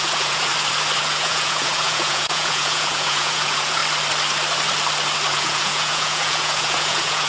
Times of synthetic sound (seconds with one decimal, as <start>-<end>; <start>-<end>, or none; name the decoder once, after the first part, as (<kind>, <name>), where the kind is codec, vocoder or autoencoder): 0.0-0.5 (vocoder, Vocos); 1.1-3.8; 5.3-7.3